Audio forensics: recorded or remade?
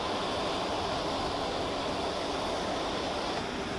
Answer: recorded